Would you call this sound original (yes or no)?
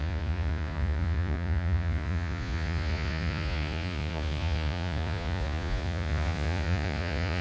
no